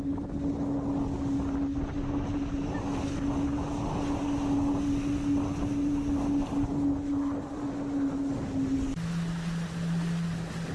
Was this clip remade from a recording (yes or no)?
no